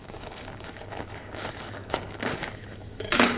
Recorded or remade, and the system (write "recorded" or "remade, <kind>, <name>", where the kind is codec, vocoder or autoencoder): remade, codec, DAC